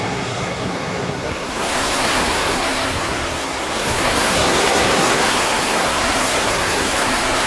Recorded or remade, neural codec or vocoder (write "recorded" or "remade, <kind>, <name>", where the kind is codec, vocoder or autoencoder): remade, codec, SNAC